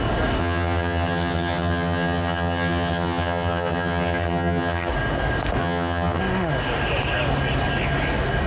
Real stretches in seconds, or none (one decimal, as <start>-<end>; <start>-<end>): 0.0-0.4; 4.9-5.6; 6.2-8.5